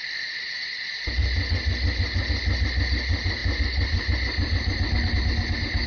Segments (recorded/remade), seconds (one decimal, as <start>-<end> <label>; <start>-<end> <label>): 0.0-3.4 recorded; 3.4-5.1 remade; 5.1-5.9 recorded